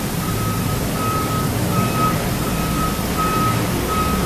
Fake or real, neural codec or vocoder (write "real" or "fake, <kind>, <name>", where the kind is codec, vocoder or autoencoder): fake, vocoder, BigVGAN v2